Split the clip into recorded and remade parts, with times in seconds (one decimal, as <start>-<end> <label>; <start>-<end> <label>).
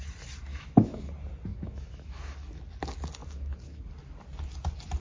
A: 0.0-0.5 recorded; 0.5-1.1 remade; 1.1-1.5 recorded; 1.5-2.6 remade; 2.6-3.2 recorded; 3.2-3.9 remade; 3.9-5.0 recorded